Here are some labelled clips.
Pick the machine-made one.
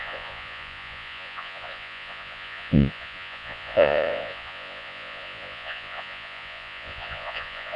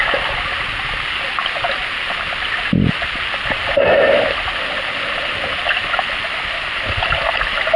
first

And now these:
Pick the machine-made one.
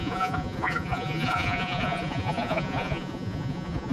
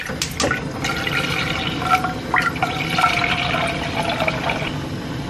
first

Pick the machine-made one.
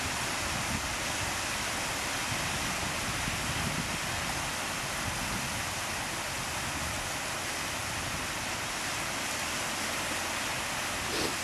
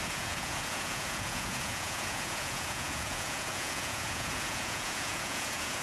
second